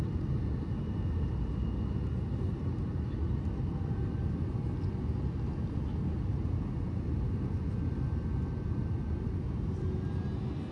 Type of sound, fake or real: real